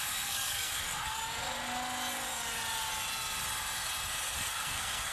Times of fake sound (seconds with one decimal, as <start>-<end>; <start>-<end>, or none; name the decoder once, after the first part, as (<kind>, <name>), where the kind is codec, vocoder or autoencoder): 0.0-1.2 (codec, SNAC); 4.3-5.1